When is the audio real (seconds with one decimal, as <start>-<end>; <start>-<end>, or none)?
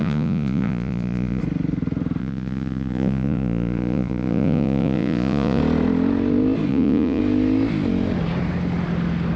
1.4-2.2; 5.6-6.7; 7.2-9.4